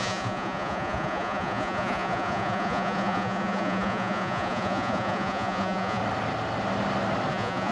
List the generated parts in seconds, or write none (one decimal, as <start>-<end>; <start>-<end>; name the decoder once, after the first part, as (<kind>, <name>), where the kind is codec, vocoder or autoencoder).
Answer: 0.0-6.0 (vocoder, Vocos); 7.3-7.7